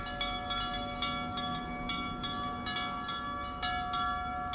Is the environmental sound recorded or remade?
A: recorded